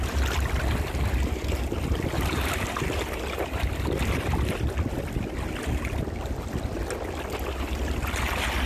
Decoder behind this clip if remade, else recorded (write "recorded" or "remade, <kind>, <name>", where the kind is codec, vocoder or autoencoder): recorded